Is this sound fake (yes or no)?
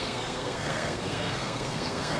yes